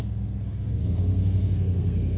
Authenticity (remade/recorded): remade